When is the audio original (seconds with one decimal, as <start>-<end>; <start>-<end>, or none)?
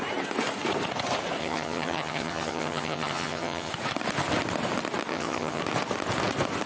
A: 0.0-1.4; 3.7-5.1; 5.6-6.7